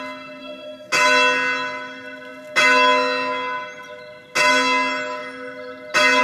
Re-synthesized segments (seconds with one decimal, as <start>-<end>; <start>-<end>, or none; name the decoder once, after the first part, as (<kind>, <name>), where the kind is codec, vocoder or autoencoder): 0.4-0.9 (codec, SNAC)

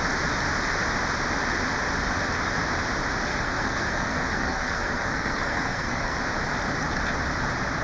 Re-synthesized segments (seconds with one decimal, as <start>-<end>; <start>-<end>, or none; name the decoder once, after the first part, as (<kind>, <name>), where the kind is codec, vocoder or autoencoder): 3.3-6.2 (codec, SNAC)

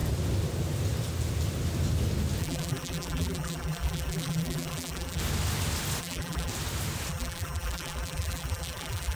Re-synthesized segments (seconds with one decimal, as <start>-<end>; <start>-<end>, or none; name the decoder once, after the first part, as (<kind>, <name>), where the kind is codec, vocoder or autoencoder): 2.4-5.2 (vocoder, BigVGAN v2); 6.0-6.5; 7.1-9.2

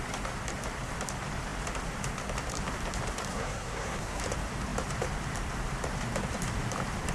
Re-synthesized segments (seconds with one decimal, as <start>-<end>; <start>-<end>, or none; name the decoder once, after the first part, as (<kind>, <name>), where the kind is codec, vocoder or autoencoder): 3.3-4.2 (codec, SNAC)

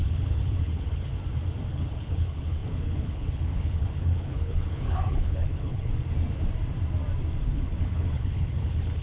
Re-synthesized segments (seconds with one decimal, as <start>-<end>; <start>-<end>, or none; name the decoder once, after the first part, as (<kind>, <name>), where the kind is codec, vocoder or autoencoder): 0.0-1.1 (codec, HILCodec); 1.7-5.9; 7.5-9.0

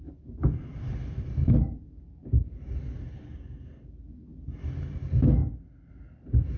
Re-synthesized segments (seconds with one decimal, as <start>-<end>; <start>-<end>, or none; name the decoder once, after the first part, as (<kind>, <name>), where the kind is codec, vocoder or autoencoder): none

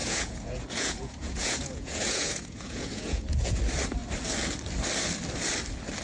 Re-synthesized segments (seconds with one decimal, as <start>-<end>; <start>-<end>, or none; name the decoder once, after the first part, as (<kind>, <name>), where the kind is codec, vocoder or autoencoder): 0.0-3.6 (vocoder, Vocos)